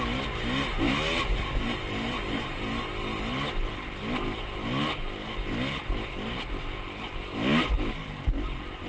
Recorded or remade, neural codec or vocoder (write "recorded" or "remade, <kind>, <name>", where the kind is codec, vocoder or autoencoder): recorded